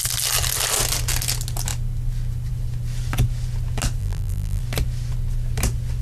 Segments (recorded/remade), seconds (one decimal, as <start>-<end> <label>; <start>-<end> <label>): 0.0-4.0 recorded; 4.0-4.6 remade; 4.6-6.0 recorded